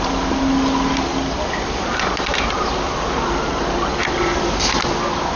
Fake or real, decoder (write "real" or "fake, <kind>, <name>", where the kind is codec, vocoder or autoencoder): real